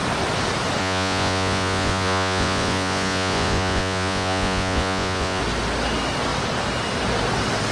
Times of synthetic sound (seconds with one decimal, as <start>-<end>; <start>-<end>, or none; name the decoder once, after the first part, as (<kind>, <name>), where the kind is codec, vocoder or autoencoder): 0.8-5.4 (vocoder, Vocos)